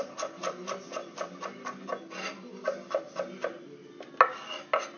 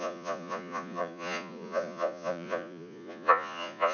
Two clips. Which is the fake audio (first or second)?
second